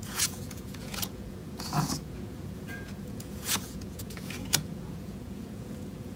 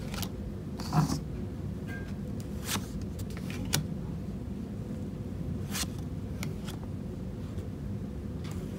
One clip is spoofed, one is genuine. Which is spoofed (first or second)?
first